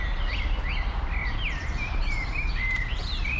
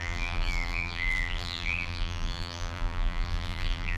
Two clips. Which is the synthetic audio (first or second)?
second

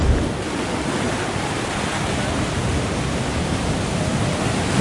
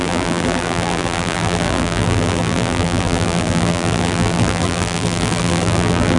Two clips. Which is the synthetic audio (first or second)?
second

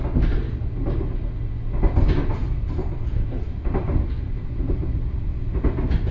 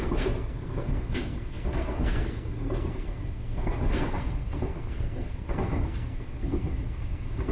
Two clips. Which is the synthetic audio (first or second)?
second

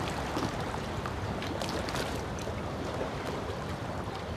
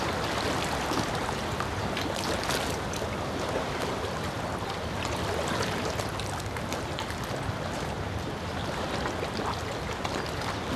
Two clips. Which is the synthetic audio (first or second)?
first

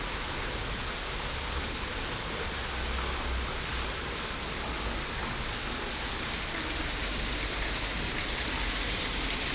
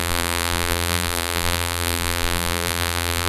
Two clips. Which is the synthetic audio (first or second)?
second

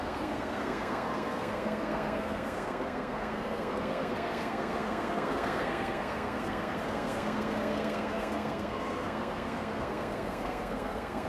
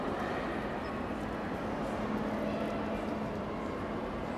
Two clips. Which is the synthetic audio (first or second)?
first